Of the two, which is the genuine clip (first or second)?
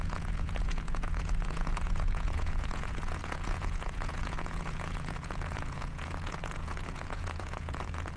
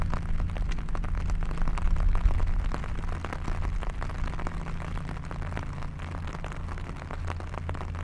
second